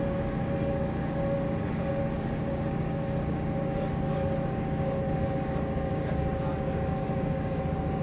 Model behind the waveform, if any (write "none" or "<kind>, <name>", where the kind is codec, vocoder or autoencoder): codec, DAC